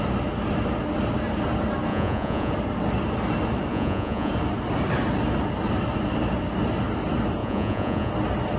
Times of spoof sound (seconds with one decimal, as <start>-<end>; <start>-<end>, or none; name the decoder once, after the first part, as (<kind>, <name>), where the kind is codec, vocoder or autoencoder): 1.9-2.5 (vocoder, Vocos); 3.7-4.3; 7.4-8.1